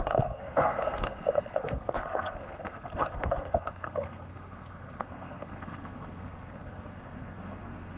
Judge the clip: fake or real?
fake